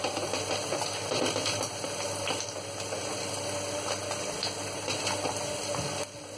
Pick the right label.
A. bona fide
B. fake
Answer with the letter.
B